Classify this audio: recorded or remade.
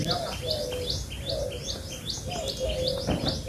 recorded